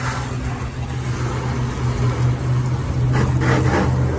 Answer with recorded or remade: recorded